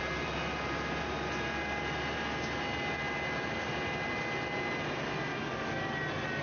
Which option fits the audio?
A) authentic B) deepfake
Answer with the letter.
A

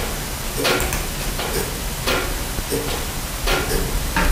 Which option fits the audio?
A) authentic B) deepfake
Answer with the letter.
A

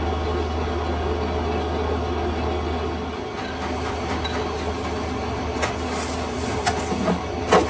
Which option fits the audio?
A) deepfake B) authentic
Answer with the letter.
B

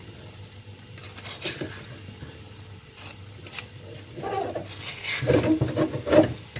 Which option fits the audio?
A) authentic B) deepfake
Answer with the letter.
A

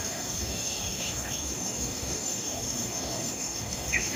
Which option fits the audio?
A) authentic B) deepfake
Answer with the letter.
B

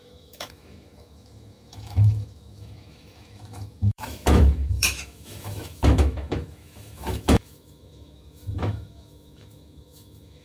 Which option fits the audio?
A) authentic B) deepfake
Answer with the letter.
B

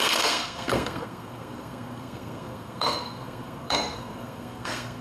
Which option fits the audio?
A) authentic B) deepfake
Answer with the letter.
B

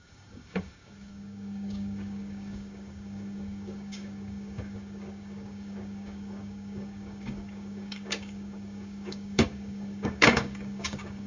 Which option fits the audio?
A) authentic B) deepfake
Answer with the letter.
B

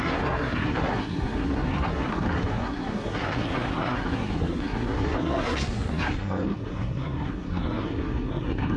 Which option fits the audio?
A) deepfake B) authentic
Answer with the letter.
A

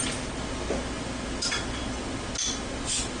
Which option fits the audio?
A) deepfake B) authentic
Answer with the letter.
B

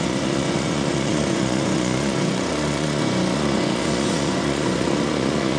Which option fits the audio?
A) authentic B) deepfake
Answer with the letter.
B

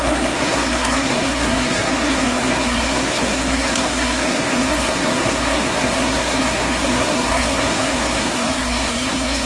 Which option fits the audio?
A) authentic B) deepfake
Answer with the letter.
B